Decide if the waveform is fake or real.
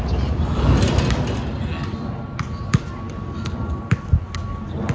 real